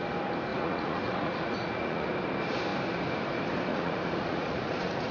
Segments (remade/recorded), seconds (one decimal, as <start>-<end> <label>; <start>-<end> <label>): 0.0-0.5 recorded; 0.5-2.1 remade; 2.1-3.7 recorded; 3.7-5.1 remade

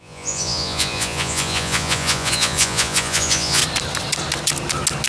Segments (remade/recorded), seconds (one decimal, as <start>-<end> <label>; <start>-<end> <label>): 0.0-3.6 remade; 3.6-5.1 recorded

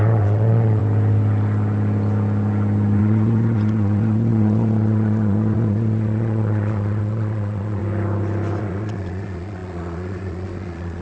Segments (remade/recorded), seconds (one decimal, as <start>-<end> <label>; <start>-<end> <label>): 0.0-0.8 remade; 0.8-3.0 recorded; 3.0-7.8 remade; 7.8-8.6 recorded; 8.6-11.0 remade

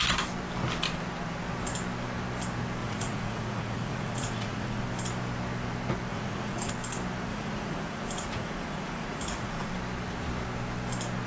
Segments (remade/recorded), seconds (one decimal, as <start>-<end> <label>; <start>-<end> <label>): 0.0-2.8 recorded; 2.8-4.8 remade; 4.8-6.1 recorded; 6.1-6.7 remade; 6.7-7.3 recorded; 7.3-9.7 remade; 9.7-11.3 recorded